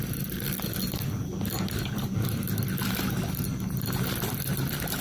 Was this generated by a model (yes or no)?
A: no